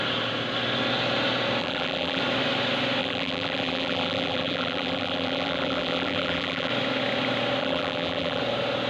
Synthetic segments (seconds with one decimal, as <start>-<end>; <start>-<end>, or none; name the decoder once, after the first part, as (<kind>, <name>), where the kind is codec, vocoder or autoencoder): 1.6-2.2 (vocoder, BigVGAN v2); 3.0-6.7; 7.6-8.4